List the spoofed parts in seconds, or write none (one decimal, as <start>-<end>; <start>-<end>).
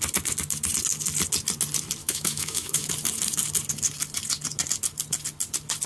2.0-2.9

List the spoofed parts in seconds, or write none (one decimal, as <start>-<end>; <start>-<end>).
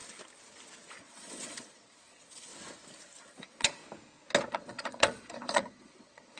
0.9-2.5; 3.2-3.8; 4.5-6.4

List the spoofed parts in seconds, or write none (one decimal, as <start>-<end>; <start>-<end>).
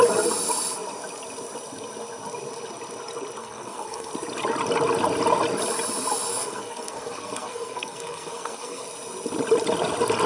3.4-4.1; 6.3-8.9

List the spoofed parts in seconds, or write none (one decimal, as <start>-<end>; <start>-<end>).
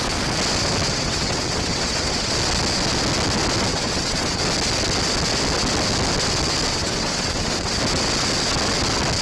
0.9-2.3; 3.7-4.4; 6.7-7.8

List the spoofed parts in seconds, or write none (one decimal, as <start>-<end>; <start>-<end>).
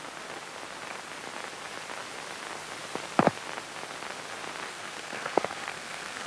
4.7-6.3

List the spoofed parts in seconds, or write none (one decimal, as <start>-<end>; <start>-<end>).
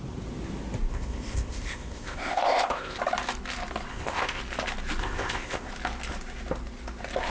0.9-3.0; 3.9-4.4; 5.0-5.7